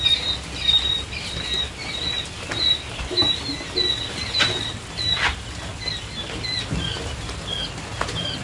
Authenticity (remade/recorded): recorded